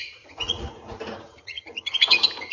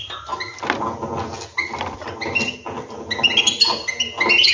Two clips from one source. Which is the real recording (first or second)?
second